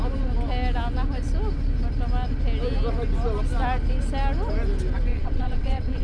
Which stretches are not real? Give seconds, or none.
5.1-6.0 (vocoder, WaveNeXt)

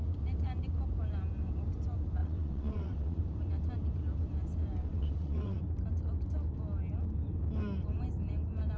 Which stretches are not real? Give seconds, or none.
2.2-3.2 (vocoder, WaveNeXt); 4.8-5.6

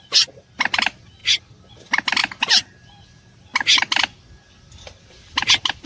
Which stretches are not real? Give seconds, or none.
none

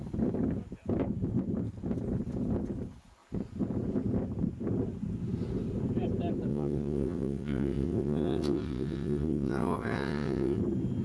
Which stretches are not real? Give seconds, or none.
6.5-10.6 (vocoder, WaveNeXt)

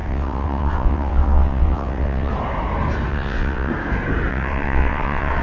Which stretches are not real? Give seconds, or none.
0.0-2.3 (vocoder, WaveNeXt); 3.1-3.7; 4.3-5.4

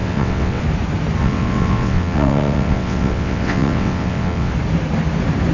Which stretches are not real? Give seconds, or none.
0.0-0.6 (vocoder, WaveNeXt); 1.2-4.5

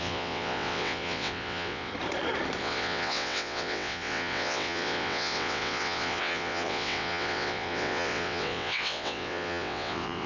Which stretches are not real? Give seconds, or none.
0.0-1.9 (vocoder, WaveNeXt); 2.6-10.3